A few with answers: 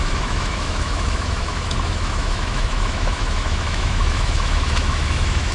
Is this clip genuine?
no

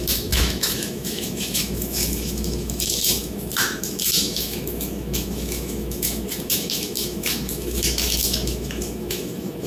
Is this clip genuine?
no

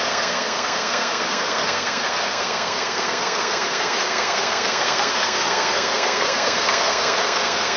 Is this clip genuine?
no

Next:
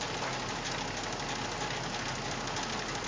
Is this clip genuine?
yes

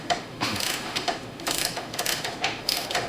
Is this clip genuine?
no